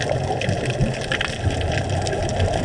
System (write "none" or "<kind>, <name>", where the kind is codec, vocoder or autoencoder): none